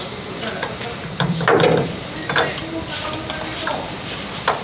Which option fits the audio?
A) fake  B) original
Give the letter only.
A